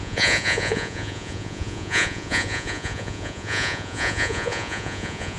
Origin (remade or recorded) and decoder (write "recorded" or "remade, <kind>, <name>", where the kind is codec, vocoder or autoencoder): remade, vocoder, Vocos